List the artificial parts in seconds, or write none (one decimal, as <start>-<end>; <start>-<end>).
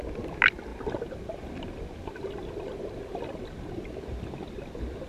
none